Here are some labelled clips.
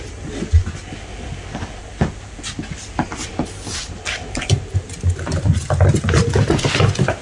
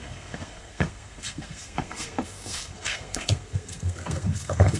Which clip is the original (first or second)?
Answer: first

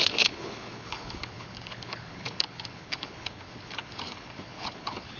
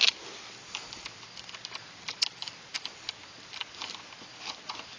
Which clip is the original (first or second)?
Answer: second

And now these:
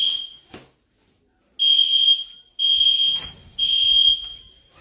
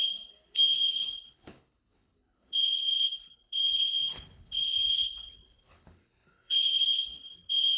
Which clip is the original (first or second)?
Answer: first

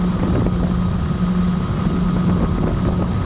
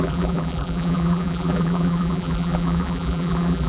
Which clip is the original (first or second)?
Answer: first